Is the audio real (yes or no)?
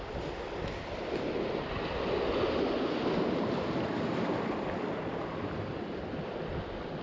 yes